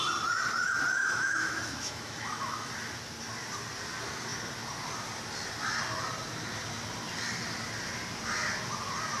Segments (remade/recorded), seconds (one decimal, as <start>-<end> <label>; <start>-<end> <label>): 0.0-1.0 recorded; 1.0-2.7 remade; 2.7-9.2 recorded